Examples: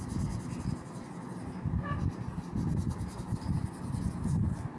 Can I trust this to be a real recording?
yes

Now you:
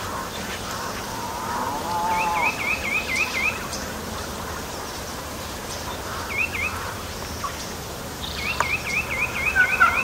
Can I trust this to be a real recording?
no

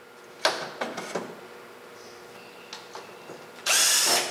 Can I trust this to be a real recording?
yes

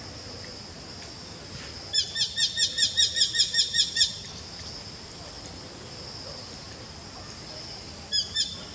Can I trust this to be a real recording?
yes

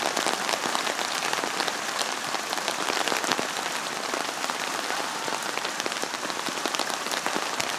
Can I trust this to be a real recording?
no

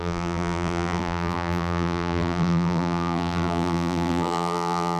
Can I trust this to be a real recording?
no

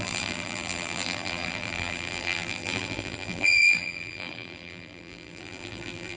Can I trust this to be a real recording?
no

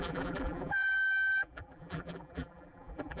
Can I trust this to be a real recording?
no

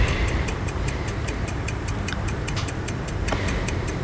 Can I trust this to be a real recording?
no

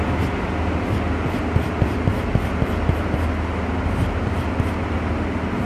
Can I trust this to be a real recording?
yes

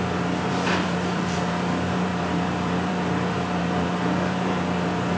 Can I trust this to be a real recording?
no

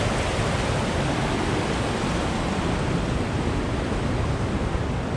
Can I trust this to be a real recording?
yes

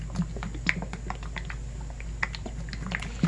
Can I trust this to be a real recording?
yes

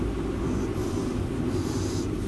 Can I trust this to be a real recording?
yes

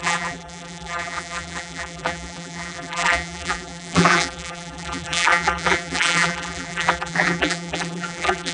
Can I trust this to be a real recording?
no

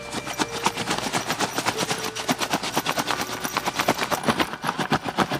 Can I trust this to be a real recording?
yes